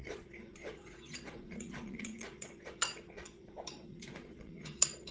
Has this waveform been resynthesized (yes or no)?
yes